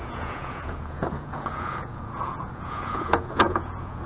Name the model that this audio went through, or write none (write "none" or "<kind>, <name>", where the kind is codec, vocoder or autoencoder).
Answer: vocoder, Vocos